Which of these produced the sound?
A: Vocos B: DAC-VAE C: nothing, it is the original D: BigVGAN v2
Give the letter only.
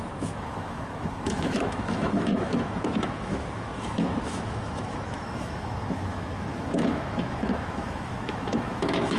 B